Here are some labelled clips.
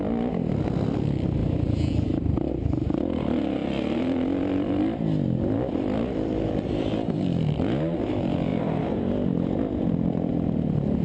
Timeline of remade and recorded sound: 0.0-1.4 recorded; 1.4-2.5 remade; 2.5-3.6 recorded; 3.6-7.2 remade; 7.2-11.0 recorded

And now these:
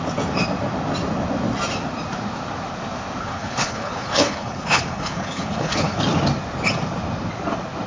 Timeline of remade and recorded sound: 0.0-3.2 recorded; 3.2-6.0 remade; 6.0-7.9 recorded

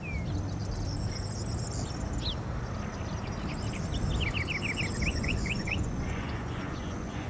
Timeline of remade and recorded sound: 0.0-5.1 recorded; 5.1-7.3 remade

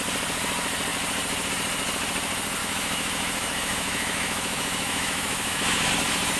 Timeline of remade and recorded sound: 0.0-2.6 recorded; 2.6-5.9 remade; 5.9-6.4 recorded

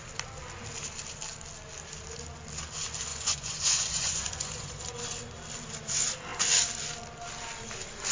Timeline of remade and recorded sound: 0.0-3.1 recorded; 3.1-4.8 remade; 4.8-8.1 recorded